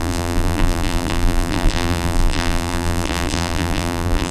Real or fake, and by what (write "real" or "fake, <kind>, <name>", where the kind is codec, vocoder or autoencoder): fake, vocoder, BigVGAN v2